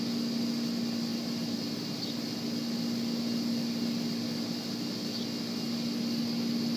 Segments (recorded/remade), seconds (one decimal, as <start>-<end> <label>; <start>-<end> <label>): 0.0-6.8 recorded